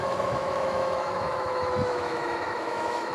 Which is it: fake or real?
fake